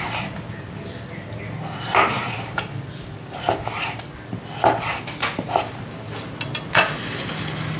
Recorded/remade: recorded